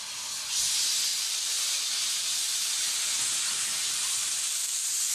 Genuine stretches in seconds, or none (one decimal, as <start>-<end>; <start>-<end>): 0.0-1.1; 2.7-4.0